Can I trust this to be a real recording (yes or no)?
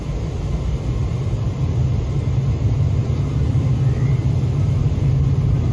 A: yes